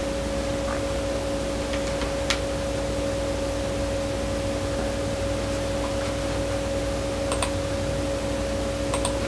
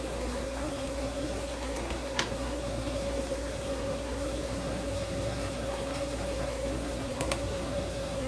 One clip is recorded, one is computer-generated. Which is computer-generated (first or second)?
second